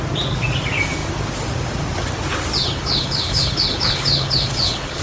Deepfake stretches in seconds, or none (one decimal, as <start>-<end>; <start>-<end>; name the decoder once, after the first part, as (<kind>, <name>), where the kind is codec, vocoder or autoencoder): 2.6-5.0 (codec, HILCodec)